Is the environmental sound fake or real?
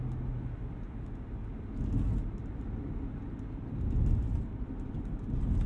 real